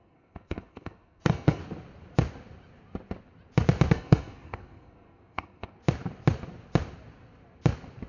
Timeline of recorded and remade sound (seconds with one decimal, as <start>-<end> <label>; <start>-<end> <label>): 0.0-1.6 remade; 1.6-3.9 recorded; 3.9-5.8 remade; 5.8-8.1 recorded

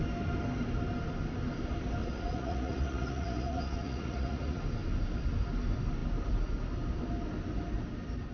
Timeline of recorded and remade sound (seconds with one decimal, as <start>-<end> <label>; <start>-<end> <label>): 0.0-2.0 recorded; 2.0-4.6 remade; 4.6-8.3 recorded